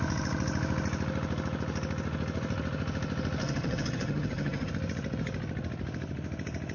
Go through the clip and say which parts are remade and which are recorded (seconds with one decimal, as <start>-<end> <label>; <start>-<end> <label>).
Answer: 0.0-3.4 recorded; 3.4-4.7 remade; 4.7-6.7 recorded